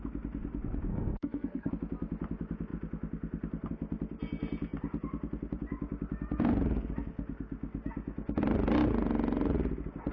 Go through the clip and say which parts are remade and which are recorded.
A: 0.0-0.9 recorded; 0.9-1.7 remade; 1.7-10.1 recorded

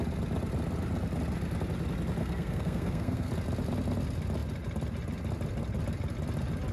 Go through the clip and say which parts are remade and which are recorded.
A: 0.0-2.2 recorded; 2.2-3.3 remade; 3.3-6.7 recorded

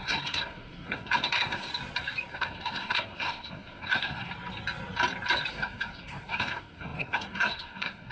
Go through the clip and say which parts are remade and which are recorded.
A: 0.0-1.7 remade; 1.7-2.3 recorded; 2.3-4.3 remade; 4.3-5.5 recorded; 5.5-8.1 remade

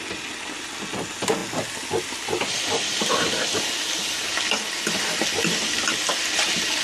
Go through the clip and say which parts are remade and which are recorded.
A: 0.0-6.8 recorded

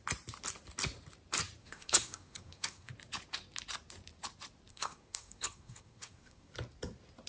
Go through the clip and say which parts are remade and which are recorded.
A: 0.0-1.6 recorded; 1.6-2.9 remade; 2.9-4.7 recorded; 4.7-6.5 remade; 6.5-7.3 recorded

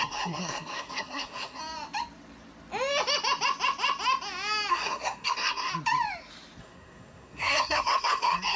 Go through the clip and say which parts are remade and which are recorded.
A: 0.0-1.6 remade; 1.6-4.7 recorded; 4.7-5.7 remade; 5.7-6.6 recorded; 6.6-8.6 remade

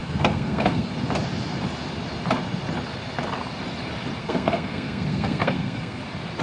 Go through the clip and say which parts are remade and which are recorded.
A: 0.0-0.9 remade; 0.9-4.2 recorded; 4.2-6.0 remade; 6.0-6.4 recorded

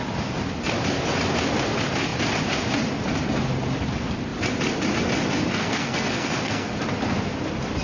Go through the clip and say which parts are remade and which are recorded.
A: 0.0-5.6 recorded; 5.6-6.7 remade; 6.7-7.8 recorded